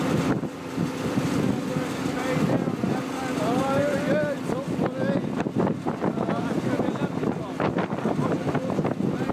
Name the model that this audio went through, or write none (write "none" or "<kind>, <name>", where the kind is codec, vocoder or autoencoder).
none